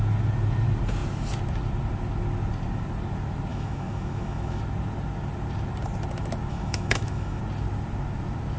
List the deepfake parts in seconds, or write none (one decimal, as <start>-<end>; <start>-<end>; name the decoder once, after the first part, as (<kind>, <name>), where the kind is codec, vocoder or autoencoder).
3.5-4.6 (autoencoder, DAC-VAE); 6.5-7.4